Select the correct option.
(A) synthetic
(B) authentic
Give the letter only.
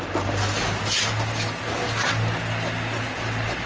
B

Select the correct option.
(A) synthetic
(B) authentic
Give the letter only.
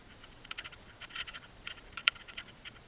A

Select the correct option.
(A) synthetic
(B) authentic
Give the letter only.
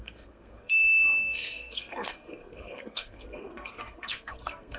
A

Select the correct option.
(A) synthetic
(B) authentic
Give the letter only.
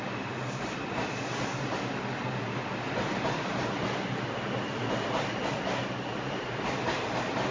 B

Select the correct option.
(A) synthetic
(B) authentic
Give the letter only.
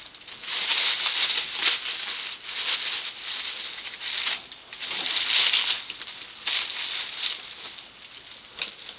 B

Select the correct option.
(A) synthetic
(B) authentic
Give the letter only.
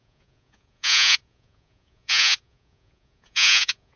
A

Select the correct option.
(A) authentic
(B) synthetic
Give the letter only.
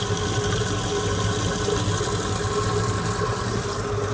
A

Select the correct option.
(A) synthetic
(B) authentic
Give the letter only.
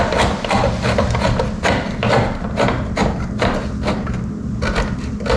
B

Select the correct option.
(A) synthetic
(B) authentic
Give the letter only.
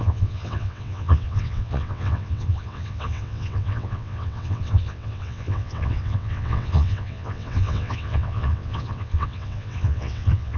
A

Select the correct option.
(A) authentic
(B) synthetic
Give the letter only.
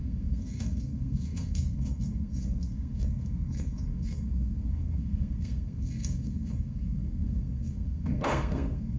B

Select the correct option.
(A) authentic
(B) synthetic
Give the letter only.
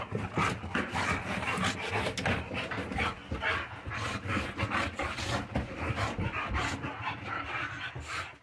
A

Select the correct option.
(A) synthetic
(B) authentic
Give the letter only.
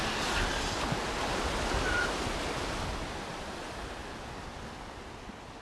B